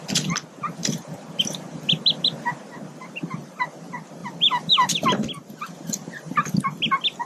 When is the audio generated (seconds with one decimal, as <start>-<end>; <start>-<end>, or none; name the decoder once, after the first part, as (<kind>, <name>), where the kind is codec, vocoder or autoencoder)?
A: 0.8-1.8 (vocoder, BigVGAN v2); 4.2-6.3